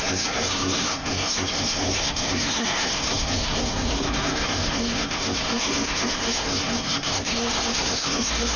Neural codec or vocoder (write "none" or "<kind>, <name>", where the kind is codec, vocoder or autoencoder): codec, SNAC